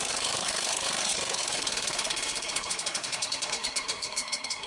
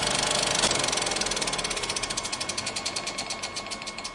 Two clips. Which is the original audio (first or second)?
second